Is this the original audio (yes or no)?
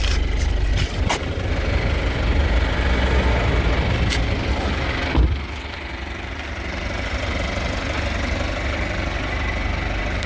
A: yes